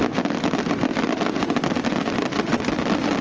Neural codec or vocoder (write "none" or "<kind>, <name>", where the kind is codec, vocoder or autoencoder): none